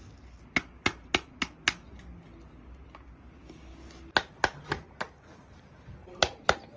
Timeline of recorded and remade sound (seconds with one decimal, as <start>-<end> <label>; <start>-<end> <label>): 0.0-6.0 recorded; 6.0-6.8 remade